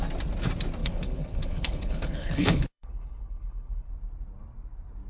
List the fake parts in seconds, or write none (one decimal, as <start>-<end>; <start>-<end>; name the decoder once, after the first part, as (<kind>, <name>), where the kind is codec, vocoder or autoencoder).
0.8-3.9 (codec, HILCodec)